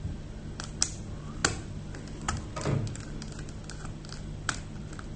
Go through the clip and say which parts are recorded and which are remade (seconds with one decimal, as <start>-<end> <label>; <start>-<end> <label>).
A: 0.0-5.2 recorded